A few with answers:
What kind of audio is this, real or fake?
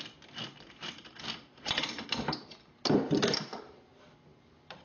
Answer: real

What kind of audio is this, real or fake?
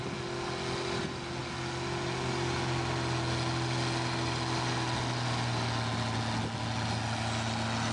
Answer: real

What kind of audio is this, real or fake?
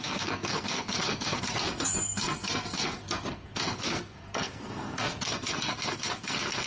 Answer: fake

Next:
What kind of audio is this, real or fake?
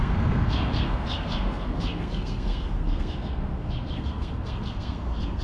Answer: fake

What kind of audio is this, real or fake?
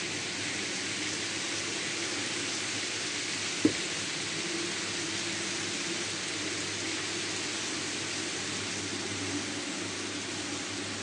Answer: real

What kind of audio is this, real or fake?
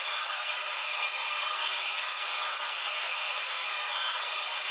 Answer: fake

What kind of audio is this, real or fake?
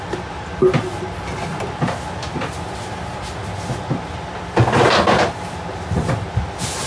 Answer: real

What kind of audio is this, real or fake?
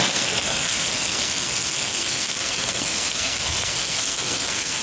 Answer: fake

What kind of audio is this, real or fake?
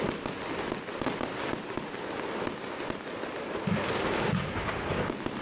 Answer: real